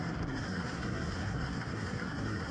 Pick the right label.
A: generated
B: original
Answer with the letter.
A